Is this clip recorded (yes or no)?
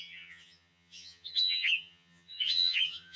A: no